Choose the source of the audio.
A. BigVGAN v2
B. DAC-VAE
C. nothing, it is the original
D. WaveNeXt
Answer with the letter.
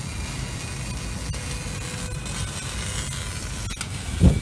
C